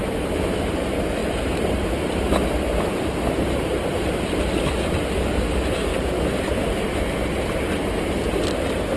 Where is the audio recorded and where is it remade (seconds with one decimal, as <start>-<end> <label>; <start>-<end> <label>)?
0.0-0.7 remade; 0.7-9.0 recorded